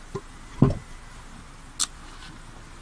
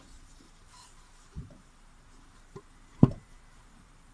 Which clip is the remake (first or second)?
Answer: second